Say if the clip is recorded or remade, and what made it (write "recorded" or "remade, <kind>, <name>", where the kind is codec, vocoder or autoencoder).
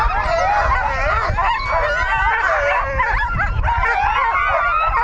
recorded